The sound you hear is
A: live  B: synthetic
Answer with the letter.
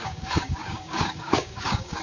B